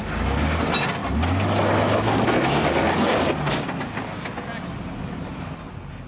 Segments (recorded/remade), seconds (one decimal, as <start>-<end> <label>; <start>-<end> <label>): 0.0-6.1 recorded